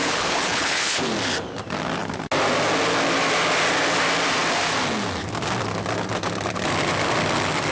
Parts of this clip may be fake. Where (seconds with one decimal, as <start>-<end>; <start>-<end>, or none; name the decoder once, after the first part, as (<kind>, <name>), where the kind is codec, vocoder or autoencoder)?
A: 0.0-1.0 (codec, HILCodec)